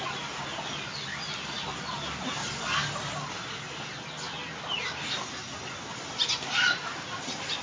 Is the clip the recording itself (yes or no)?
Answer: yes